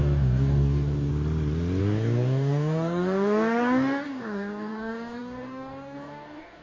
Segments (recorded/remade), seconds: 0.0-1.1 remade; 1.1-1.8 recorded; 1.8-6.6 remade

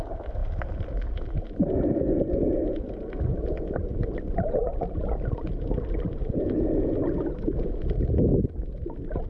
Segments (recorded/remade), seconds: 0.0-9.3 recorded

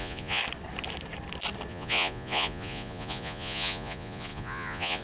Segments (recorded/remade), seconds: 0.0-0.4 remade; 0.4-1.7 recorded; 1.7-5.0 remade